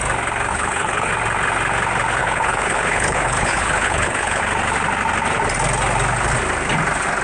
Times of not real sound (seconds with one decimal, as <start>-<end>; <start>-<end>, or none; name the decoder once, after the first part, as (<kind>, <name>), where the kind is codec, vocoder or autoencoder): 0.5-1.1 (codec, HILCodec); 2.2-4.4